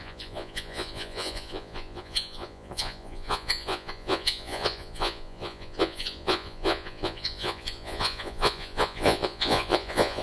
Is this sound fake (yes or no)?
yes